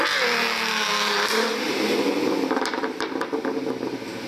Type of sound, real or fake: real